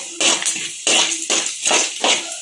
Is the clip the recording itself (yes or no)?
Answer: yes